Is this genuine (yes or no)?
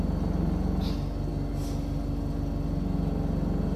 yes